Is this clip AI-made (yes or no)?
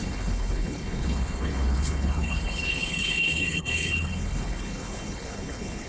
yes